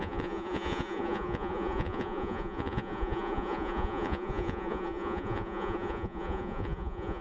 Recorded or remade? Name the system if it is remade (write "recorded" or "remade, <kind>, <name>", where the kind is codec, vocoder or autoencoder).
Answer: remade, vocoder, Vocos